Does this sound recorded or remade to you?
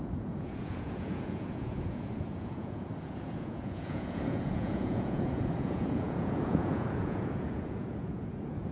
remade